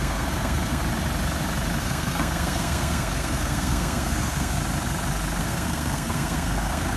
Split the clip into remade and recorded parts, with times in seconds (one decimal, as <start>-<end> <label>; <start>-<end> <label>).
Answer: 0.0-0.8 remade; 0.8-1.8 recorded; 1.8-4.6 remade; 4.6-5.4 recorded; 5.4-7.0 remade